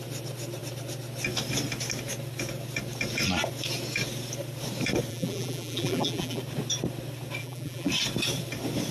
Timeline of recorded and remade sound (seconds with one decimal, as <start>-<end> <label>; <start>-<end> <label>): 0.0-5.1 recorded; 5.1-6.4 remade; 6.4-7.4 recorded; 7.4-7.9 remade; 7.9-8.9 recorded

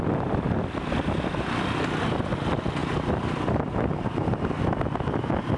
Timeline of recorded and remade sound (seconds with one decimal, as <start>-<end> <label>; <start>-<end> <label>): 0.0-2.8 recorded; 2.8-4.3 remade; 4.3-5.6 recorded